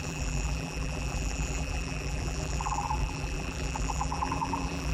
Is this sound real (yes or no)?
no